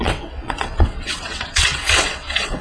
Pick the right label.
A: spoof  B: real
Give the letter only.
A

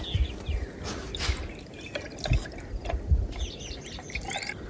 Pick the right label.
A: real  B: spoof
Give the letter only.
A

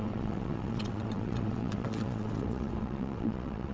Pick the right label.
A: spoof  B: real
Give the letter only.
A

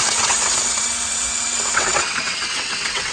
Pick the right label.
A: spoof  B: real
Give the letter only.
A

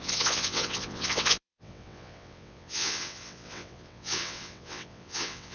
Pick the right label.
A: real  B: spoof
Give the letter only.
B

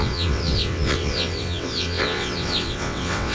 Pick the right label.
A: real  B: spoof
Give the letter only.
B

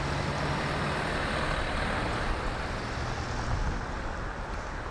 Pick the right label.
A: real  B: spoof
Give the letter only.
A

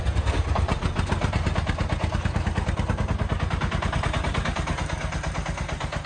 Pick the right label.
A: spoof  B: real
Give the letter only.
B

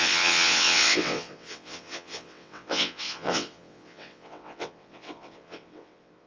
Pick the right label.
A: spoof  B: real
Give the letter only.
A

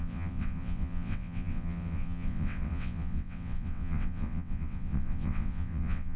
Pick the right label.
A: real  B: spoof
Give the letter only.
B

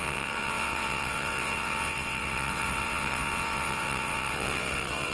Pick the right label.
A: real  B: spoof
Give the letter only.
B